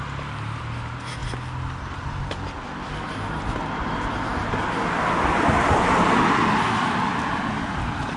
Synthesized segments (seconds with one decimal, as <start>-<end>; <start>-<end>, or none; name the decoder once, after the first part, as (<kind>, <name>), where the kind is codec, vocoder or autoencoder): none